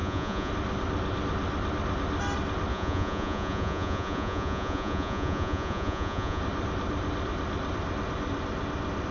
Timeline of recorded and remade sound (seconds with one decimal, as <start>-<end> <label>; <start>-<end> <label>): 0.0-0.5 remade; 0.5-2.7 recorded; 2.7-6.4 remade; 6.4-9.1 recorded